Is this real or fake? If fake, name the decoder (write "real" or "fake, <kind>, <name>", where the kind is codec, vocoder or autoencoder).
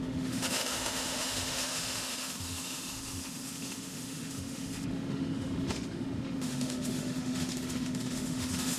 fake, autoencoder, DAC-VAE